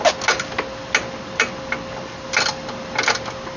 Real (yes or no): yes